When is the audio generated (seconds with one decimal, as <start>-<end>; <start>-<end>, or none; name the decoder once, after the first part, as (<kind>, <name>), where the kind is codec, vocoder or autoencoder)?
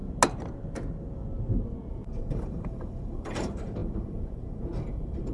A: 1.9-5.3 (vocoder, BigVGAN v2)